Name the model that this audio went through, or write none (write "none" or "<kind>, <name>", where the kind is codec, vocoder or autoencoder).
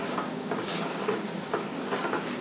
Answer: codec, DAC